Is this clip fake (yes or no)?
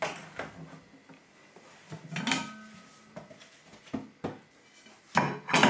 no